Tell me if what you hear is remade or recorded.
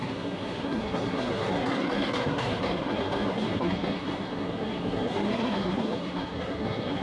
remade